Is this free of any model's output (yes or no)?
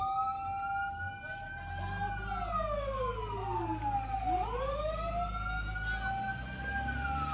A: yes